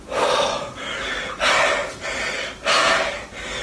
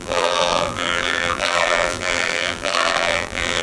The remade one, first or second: second